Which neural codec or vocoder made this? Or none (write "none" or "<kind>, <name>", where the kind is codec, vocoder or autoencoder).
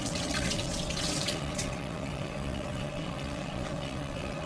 vocoder, WaveNeXt